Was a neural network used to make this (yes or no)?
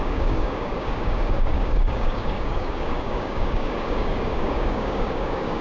yes